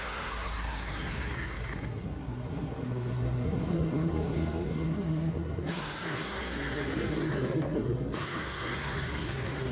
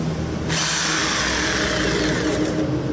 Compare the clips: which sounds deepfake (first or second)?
first